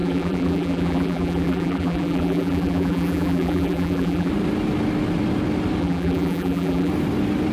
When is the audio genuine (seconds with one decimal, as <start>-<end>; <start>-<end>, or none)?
4.3-5.8; 6.9-7.5